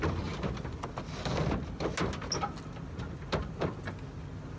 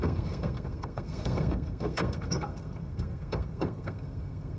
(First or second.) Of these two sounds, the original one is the first